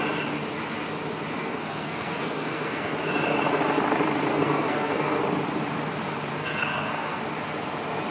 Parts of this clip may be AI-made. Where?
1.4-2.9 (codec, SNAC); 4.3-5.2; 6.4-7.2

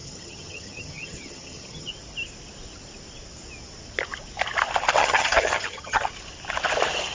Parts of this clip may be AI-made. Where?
0.0-1.9 (vocoder, HiFi-GAN); 5.0-6.1

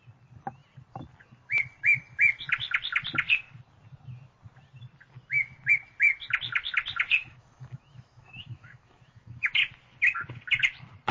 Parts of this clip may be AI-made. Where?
7.2-9.6 (autoencoder, DAC-VAE)

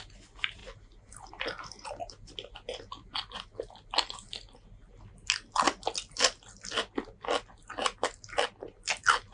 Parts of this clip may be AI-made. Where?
none